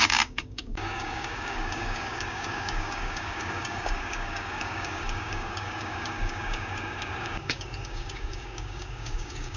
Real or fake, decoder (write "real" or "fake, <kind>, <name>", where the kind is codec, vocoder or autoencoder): fake, codec, DAC